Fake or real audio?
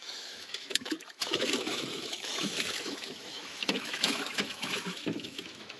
fake